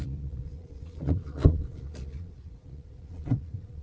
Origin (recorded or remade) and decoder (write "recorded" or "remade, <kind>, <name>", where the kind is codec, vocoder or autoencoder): remade, vocoder, Vocos